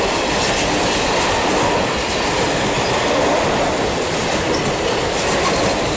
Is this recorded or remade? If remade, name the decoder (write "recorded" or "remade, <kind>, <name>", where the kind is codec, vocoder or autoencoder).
remade, vocoder, BigVGAN v2